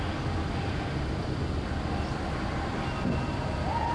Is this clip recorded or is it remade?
recorded